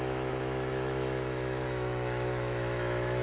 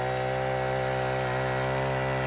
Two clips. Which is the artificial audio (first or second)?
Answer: first